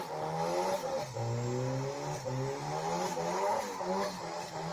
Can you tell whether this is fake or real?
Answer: real